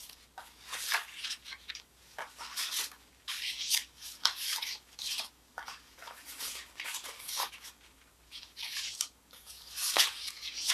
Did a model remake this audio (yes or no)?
yes